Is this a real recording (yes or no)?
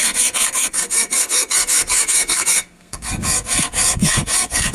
no